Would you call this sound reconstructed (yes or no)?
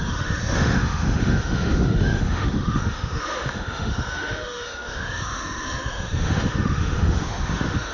yes